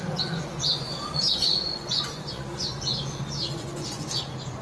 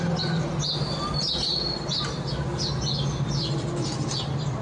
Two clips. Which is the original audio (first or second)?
second